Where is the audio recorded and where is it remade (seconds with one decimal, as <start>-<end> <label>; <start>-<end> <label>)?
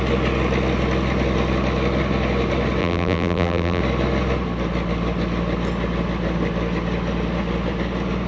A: 0.0-2.8 recorded; 2.8-3.8 remade; 3.8-8.3 recorded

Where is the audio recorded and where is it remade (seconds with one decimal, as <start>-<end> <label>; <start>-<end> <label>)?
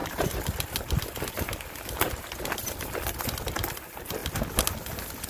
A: 0.0-5.3 recorded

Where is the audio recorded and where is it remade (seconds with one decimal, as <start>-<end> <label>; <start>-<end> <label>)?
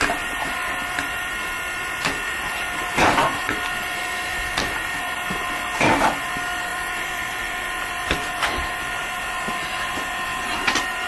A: 0.0-0.6 recorded; 0.6-4.9 remade; 4.9-6.7 recorded; 6.7-9.0 remade; 9.0-11.1 recorded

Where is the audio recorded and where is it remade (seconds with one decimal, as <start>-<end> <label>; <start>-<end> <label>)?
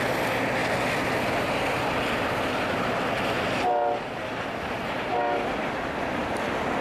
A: 0.0-6.8 recorded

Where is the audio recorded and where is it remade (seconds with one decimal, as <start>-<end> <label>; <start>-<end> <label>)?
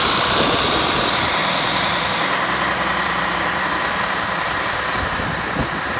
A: 0.0-1.4 recorded; 1.4-5.0 remade; 5.0-6.0 recorded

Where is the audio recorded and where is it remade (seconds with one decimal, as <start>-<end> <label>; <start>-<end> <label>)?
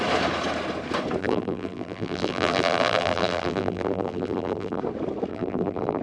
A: 0.0-1.2 recorded; 1.2-4.8 remade; 4.8-5.3 recorded; 5.3-6.0 remade